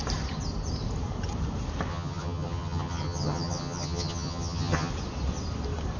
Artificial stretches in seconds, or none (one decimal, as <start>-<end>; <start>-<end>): 1.9-4.9